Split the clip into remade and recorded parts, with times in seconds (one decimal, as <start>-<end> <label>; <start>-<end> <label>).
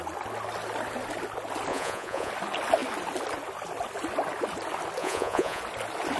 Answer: 0.0-1.7 recorded; 1.7-2.3 remade; 2.3-5.0 recorded; 5.0-5.6 remade; 5.6-6.2 recorded